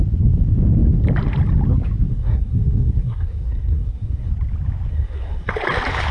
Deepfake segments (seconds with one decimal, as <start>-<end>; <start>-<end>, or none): 2.1-4.3; 4.9-5.5